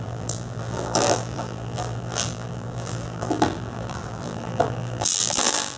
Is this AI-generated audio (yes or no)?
yes